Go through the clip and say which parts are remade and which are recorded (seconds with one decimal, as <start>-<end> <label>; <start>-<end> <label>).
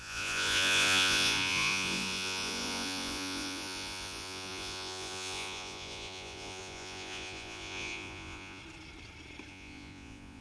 0.0-8.6 remade; 8.6-9.5 recorded; 9.5-10.4 remade